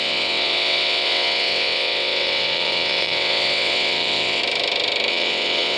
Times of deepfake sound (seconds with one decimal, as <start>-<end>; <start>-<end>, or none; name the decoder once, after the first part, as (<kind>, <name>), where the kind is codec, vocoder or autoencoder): 0.0-4.4 (vocoder, WaveNeXt); 5.1-5.8